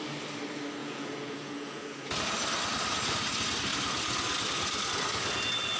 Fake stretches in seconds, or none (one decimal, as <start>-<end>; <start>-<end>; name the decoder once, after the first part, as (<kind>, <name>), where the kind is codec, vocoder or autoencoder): 0.8-2.1 (vocoder, Vocos)